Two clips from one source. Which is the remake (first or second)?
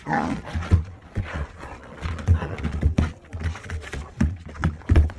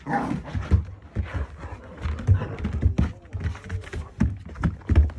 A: first